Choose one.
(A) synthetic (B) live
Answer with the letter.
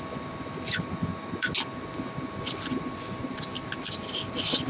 B